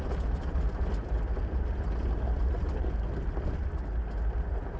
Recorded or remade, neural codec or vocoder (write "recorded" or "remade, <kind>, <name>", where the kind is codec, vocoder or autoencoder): recorded